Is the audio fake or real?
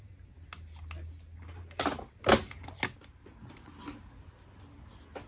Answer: real